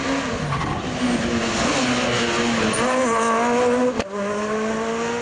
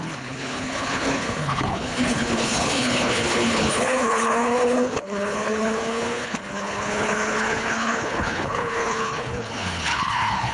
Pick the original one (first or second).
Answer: first